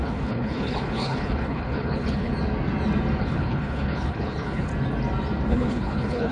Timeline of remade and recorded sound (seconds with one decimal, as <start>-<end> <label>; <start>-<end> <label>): 0.0-2.3 remade; 2.3-3.2 recorded; 3.2-4.7 remade; 4.7-5.5 recorded; 5.5-6.3 remade